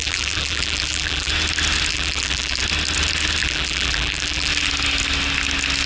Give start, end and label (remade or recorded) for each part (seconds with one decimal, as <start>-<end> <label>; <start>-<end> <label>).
0.0-1.3 remade; 1.3-1.9 recorded; 1.9-2.6 remade; 2.6-3.4 recorded; 3.4-4.5 remade; 4.5-5.9 recorded